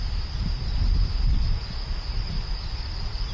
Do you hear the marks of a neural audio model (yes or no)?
no